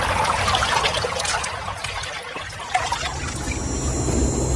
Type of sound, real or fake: real